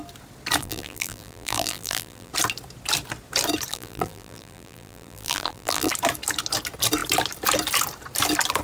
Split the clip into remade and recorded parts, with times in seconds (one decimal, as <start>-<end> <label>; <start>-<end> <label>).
0.0-0.6 recorded; 0.6-2.3 remade; 2.3-3.7 recorded; 3.7-5.9 remade; 5.9-8.6 recorded